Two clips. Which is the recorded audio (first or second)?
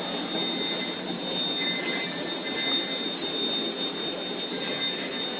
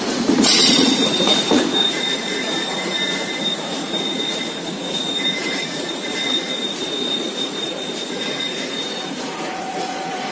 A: first